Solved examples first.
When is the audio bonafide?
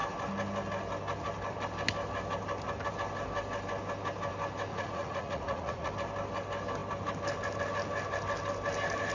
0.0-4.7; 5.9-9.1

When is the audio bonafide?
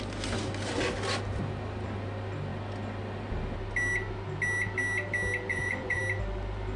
0.0-5.5; 6.0-6.8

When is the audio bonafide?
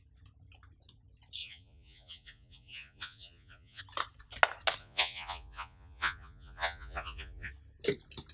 0.0-1.4; 3.8-4.8; 7.5-8.3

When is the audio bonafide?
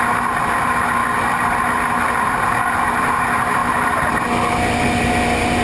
0.0-5.6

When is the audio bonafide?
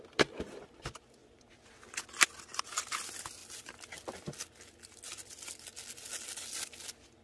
0.0-7.2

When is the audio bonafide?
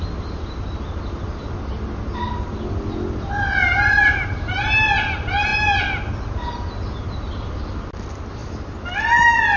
0.0-9.6